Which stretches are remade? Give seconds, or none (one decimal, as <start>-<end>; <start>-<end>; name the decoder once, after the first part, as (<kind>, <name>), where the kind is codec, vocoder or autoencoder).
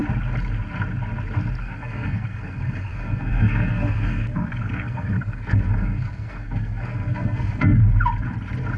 1.6-7.8 (codec, SNAC)